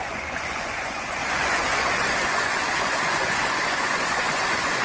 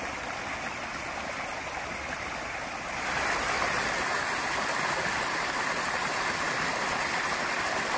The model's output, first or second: first